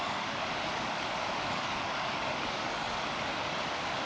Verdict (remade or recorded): remade